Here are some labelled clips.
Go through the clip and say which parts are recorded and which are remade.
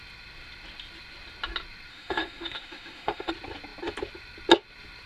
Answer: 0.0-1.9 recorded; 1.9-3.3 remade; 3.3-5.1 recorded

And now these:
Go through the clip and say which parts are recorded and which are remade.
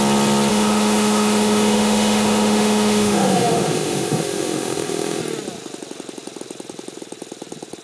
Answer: 0.0-0.5 recorded; 0.5-5.2 remade; 5.2-7.8 recorded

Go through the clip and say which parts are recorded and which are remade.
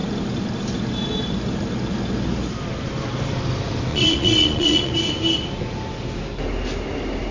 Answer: 0.0-3.9 recorded; 3.9-4.9 remade; 4.9-7.3 recorded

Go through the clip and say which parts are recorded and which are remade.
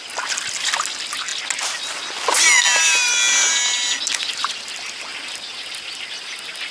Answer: 0.0-6.7 recorded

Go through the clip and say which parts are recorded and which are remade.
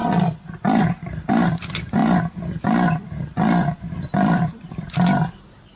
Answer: 0.0-1.3 remade; 1.3-2.0 recorded; 2.0-4.7 remade; 4.7-5.8 recorded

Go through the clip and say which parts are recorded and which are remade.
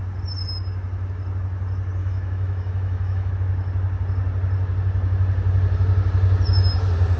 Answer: 0.0-2.0 recorded; 2.0-3.3 remade; 3.3-7.2 recorded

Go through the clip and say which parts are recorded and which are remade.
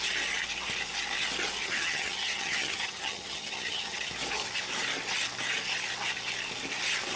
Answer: 0.0-1.6 recorded; 1.6-4.1 remade; 4.1-7.2 recorded